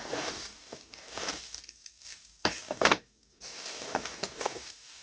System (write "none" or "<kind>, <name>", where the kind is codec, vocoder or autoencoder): codec, DAC